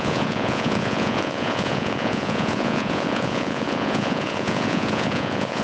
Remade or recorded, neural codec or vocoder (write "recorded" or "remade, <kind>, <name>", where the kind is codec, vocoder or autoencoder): remade, vocoder, Vocos